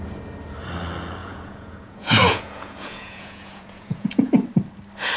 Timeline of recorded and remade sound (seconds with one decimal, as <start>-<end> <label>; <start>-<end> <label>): 0.0-1.2 recorded; 1.2-4.3 remade; 4.3-5.2 recorded